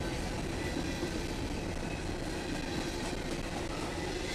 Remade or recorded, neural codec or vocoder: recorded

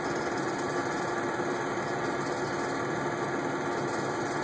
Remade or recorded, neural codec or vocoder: recorded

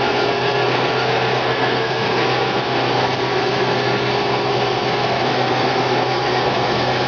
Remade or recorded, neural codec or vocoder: remade, codec, SNAC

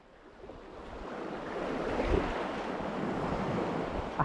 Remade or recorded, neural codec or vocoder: recorded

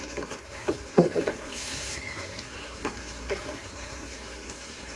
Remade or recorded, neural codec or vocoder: remade, codec, SNAC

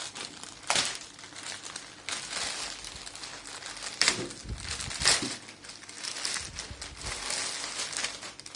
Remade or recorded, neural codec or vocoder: recorded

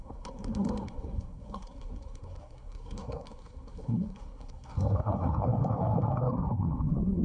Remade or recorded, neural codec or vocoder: remade, codec, SNAC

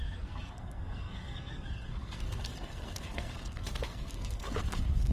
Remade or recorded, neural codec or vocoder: remade, codec, SNAC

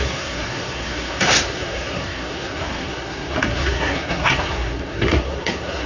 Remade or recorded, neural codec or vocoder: remade, codec, SNAC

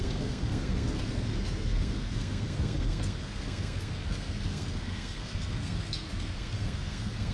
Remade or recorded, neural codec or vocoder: remade, codec, SNAC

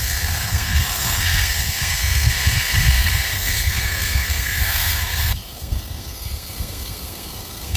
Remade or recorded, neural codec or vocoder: remade, codec, SNAC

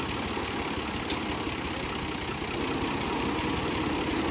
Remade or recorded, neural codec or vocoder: recorded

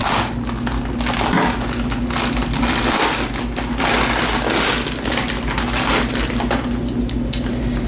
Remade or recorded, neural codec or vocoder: recorded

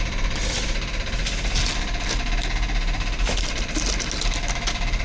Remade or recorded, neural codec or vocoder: recorded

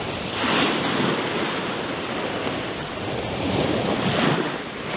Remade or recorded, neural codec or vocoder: recorded